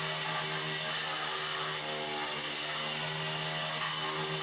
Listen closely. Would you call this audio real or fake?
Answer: real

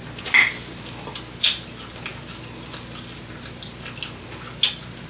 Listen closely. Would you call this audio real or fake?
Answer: real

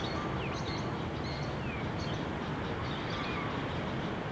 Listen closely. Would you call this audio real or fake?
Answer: real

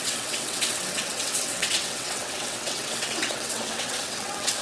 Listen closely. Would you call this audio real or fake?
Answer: fake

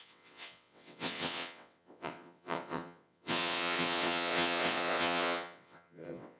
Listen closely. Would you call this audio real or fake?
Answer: fake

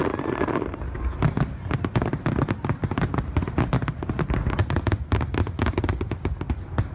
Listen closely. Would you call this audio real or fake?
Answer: real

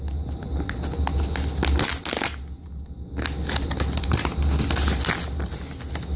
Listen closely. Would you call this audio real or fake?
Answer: real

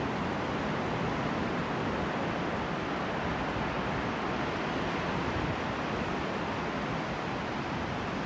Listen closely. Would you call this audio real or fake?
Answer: real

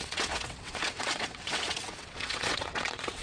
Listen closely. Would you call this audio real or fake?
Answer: fake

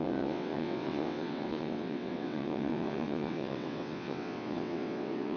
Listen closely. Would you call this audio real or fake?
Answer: fake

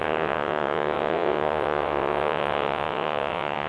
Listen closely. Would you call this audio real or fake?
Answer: fake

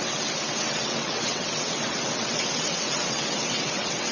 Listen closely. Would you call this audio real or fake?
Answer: fake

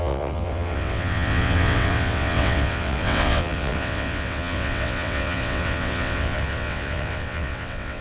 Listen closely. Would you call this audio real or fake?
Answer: fake